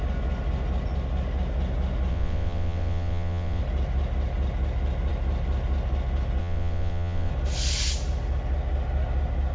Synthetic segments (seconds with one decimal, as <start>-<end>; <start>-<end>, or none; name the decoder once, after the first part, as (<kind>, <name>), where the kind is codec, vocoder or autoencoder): 2.1-3.6 (vocoder, WaveNeXt); 6.4-7.3